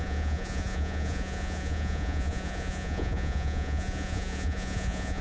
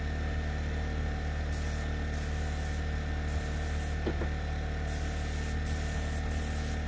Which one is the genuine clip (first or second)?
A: second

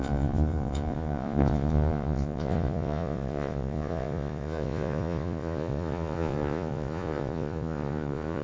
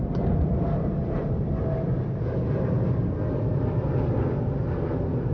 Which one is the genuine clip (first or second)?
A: second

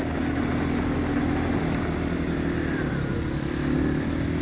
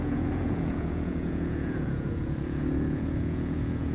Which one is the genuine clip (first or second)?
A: first